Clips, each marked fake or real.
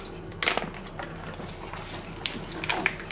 real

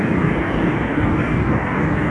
fake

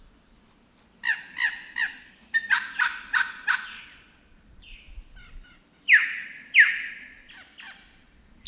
real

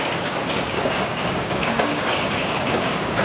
fake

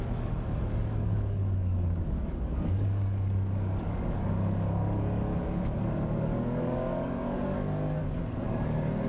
fake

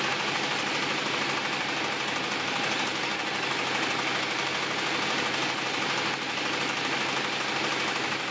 real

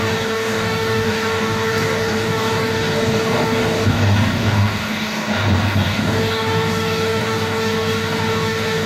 fake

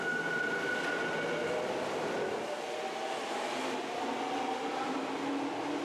real